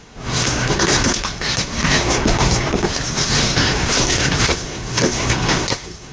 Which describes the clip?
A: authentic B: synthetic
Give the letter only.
B